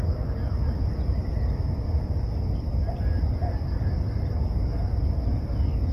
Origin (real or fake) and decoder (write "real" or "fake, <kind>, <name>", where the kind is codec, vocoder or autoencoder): real